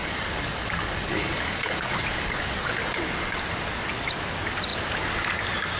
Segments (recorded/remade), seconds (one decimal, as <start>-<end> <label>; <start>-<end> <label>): 0.0-3.0 remade; 3.0-5.8 recorded